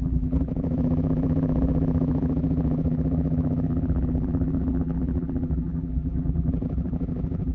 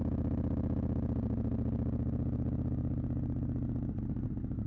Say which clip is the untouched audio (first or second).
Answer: second